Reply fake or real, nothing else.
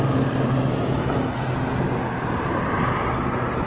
real